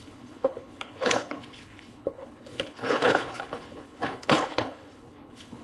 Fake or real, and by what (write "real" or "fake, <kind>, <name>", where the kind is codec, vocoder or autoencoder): fake, codec, HILCodec